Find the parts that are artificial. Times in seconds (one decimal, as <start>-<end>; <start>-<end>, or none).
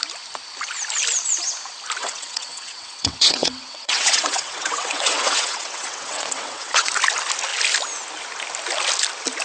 2.0-6.9